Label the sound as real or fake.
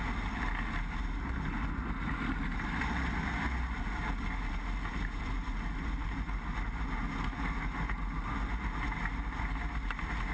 real